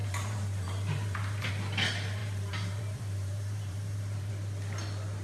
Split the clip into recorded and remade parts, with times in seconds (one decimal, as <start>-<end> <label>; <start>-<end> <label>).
0.0-1.5 remade; 1.5-2.2 recorded; 2.2-4.3 remade; 4.3-5.2 recorded